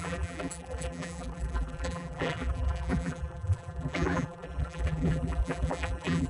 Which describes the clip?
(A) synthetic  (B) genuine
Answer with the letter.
A